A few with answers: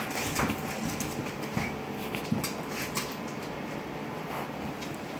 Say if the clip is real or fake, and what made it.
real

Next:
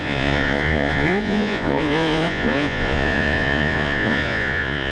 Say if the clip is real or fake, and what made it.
fake, vocoder, Vocos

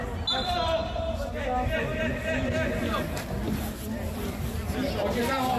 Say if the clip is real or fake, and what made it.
real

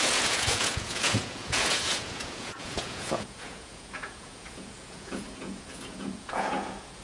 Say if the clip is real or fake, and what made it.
fake, vocoder, Vocos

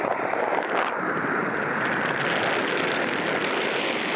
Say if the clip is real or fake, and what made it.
fake, vocoder, BigVGAN v2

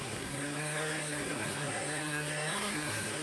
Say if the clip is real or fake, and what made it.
fake, codec, SNAC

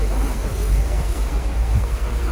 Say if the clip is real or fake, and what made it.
fake, codec, SNAC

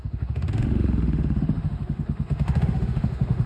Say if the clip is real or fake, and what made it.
fake, autoencoder, DAC-VAE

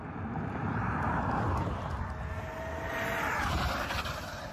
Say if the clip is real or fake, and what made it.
real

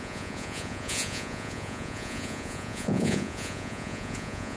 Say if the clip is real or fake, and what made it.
fake, vocoder, Vocos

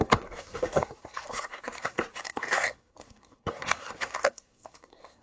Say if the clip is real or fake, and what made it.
fake, codec, SNAC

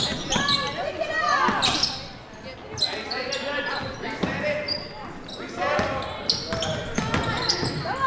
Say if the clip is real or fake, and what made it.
real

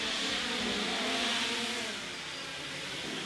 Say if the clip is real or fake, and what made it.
real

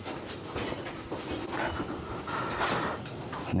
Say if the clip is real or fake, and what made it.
real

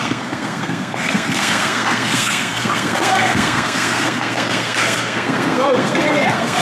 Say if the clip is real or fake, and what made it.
fake, codec, SNAC